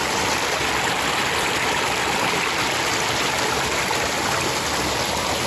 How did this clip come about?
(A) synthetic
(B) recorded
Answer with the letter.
B